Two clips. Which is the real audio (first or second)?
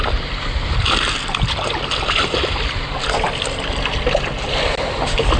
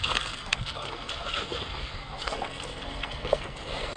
first